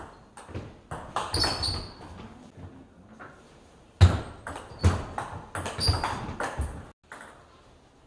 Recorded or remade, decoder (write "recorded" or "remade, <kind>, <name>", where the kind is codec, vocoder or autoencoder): recorded